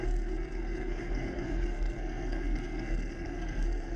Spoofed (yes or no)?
yes